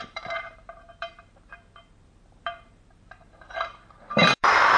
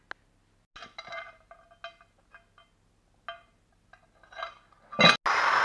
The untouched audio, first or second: second